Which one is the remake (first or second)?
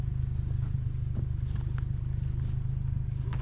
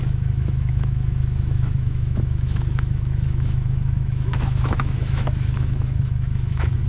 second